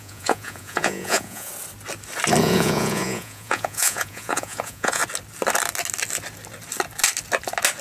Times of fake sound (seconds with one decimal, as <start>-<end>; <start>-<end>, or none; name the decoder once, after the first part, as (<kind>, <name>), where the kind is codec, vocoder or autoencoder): 0.0-1.5 (vocoder, Vocos); 2.4-5.0